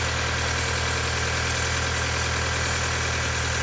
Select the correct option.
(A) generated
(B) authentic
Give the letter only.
B